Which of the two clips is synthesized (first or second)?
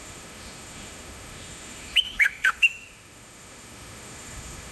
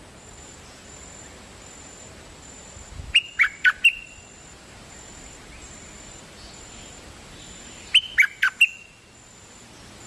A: first